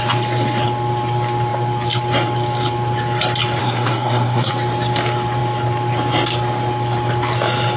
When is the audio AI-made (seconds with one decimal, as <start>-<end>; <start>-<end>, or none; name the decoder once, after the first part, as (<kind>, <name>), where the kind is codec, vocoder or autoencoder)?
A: 3.6-4.5 (codec, SNAC)